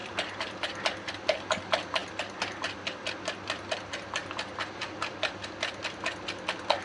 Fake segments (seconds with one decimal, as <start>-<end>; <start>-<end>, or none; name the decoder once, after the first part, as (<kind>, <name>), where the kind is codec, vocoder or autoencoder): 0.0-1.1 (vocoder, BigVGAN v2); 4.2-5.8